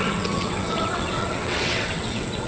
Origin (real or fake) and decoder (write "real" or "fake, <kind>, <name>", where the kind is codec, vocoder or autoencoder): fake, vocoder, WaveNeXt